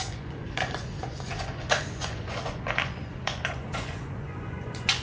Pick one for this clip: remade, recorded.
remade